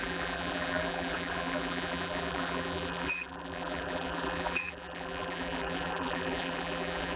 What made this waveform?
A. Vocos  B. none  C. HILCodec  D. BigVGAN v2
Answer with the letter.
D